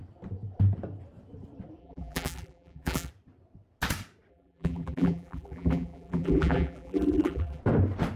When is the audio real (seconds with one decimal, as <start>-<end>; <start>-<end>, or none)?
0.0-1.8; 3.1-4.3; 7.6-8.2